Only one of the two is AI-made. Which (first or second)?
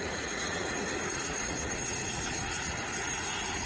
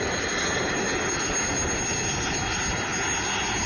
first